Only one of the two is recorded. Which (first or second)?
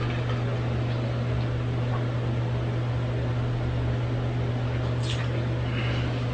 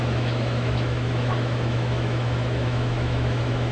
first